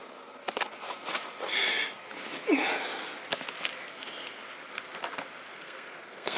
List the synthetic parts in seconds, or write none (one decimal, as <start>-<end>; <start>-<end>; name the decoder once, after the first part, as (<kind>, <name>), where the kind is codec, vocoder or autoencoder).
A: 5.5-6.4 (codec, SNAC)